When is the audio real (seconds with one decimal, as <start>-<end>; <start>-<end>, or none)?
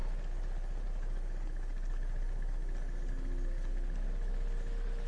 0.0-5.1